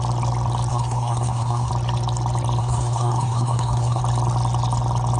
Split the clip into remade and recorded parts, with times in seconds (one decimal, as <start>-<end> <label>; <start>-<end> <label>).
0.0-0.7 recorded; 0.7-1.7 remade; 1.7-2.6 recorded; 2.6-4.0 remade; 4.0-5.2 recorded